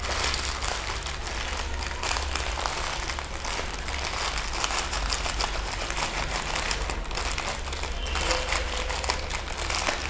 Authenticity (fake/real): real